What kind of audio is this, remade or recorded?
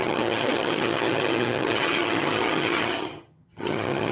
remade